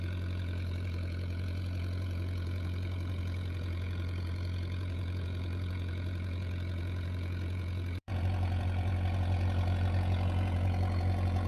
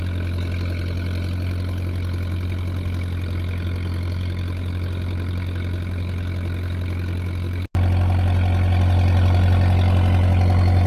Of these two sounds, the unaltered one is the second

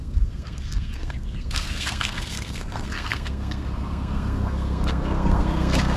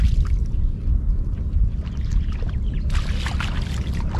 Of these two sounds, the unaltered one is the second